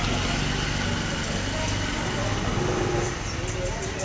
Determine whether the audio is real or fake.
real